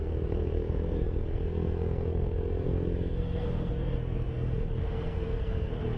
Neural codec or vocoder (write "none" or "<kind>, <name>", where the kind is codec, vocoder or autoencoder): codec, SNAC